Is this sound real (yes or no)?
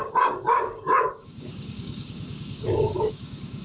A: no